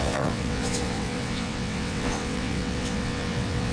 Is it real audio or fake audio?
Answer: fake